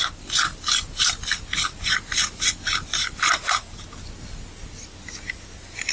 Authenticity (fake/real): real